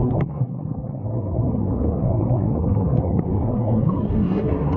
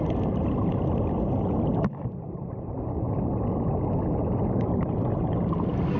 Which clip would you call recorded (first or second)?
second